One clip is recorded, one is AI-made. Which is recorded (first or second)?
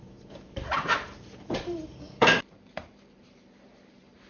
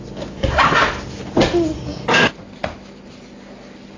second